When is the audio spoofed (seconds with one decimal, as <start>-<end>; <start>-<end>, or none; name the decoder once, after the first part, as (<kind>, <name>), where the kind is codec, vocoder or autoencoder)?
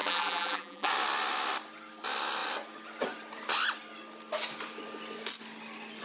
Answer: 0.0-0.9 (vocoder, BigVGAN v2)